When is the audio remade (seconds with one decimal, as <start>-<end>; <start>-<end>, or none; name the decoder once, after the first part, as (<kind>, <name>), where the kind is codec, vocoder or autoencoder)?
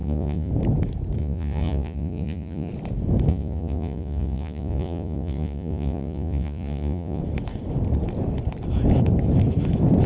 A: 0.0-0.5 (vocoder, Vocos); 1.2-2.7; 3.3-7.2